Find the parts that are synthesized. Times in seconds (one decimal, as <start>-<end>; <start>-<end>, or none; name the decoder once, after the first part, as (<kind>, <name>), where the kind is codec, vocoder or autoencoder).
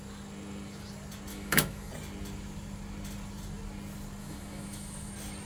1.3-1.9 (autoencoder, DAC-VAE); 4.2-5.1